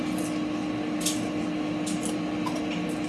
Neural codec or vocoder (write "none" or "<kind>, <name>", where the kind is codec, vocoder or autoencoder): none